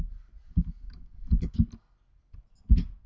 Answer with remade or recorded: recorded